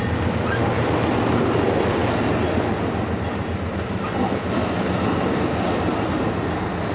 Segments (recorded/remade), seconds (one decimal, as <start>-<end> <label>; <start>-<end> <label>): 0.0-6.9 recorded